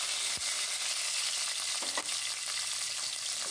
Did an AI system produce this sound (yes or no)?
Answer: no